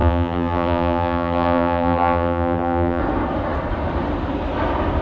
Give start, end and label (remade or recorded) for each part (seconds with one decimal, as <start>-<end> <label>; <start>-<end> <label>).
0.0-3.0 remade; 3.0-5.0 recorded